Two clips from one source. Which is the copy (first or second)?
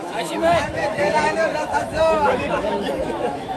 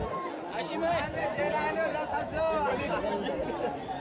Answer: first